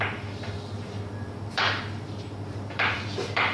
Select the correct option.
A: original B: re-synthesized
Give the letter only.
B